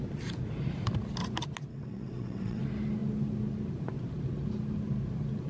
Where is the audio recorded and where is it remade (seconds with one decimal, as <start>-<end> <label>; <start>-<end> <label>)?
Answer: 0.0-1.7 recorded; 1.7-2.6 remade; 2.6-5.5 recorded

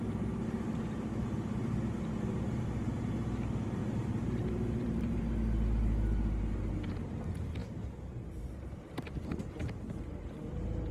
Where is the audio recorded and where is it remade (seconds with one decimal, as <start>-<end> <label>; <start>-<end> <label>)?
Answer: 0.0-3.8 recorded; 3.8-5.2 remade; 5.2-10.9 recorded

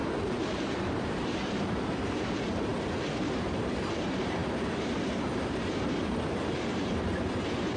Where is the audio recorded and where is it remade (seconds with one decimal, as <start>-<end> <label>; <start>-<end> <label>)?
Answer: 0.0-2.7 remade; 2.7-3.2 recorded; 3.2-7.1 remade; 7.1-7.8 recorded

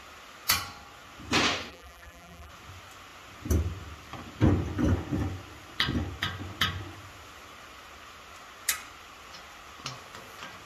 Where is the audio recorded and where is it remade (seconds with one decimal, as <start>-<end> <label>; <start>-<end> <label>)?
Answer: 0.0-1.7 recorded; 1.7-2.5 remade; 2.5-10.7 recorded

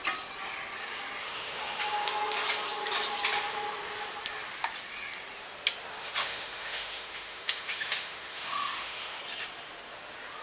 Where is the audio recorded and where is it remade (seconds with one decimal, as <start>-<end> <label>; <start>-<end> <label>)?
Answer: 0.0-1.2 recorded; 1.2-1.8 remade; 1.8-6.0 recorded; 6.0-9.2 remade; 9.2-10.4 recorded

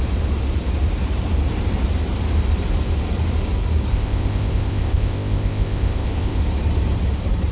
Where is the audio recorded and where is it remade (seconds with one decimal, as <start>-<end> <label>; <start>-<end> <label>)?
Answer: 0.0-3.9 recorded; 3.9-6.4 remade; 6.4-7.5 recorded